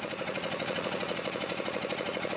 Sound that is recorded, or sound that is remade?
remade